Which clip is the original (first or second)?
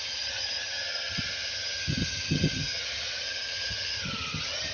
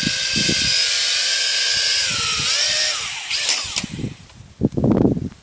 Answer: second